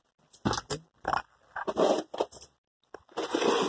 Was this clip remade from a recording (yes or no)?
no